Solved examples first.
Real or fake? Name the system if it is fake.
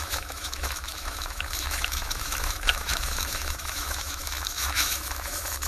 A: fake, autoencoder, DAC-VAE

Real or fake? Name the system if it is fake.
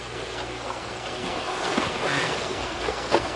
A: fake, codec, SNAC